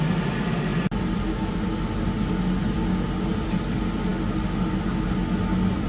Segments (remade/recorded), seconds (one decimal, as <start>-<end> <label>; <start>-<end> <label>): 0.0-5.9 recorded